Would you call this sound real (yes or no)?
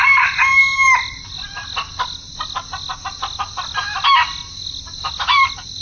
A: yes